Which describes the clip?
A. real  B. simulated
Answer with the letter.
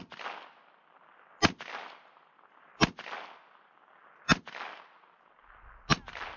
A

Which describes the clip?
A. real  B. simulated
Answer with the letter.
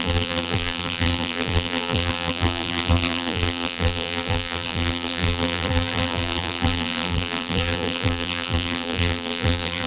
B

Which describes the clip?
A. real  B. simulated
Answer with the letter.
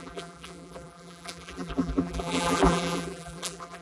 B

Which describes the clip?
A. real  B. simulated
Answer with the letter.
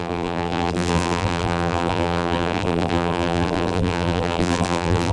B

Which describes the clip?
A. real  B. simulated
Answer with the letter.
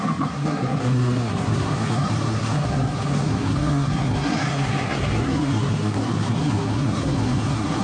B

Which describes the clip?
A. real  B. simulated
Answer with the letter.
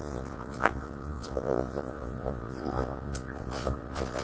B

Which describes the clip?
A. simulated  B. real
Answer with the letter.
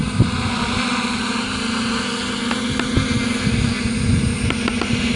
B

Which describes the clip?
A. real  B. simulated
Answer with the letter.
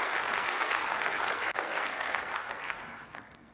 B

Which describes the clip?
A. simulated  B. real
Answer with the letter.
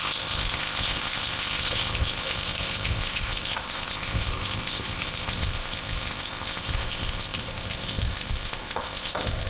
A